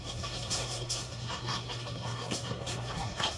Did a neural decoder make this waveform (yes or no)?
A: yes